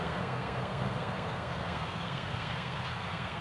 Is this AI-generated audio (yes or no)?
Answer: yes